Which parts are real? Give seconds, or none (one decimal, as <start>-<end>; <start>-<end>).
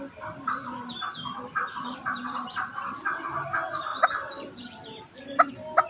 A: 0.0-0.8; 3.4-3.9; 5.5-5.9